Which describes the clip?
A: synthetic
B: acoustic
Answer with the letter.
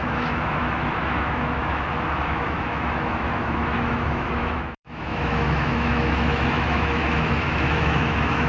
A